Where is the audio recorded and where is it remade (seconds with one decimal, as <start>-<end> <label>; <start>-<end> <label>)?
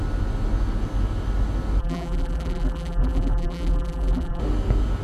0.0-1.8 recorded; 1.8-4.4 remade; 4.4-5.0 recorded